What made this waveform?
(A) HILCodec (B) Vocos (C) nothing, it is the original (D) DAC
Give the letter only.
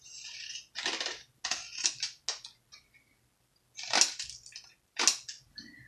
C